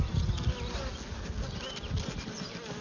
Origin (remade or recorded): recorded